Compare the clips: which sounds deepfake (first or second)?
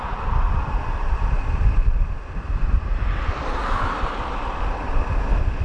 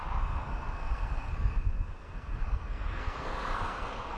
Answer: second